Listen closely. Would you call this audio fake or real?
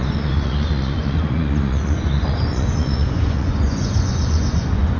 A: fake